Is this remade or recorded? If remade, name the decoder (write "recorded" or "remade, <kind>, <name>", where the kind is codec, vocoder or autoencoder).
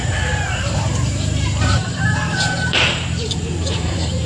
remade, vocoder, BigVGAN v2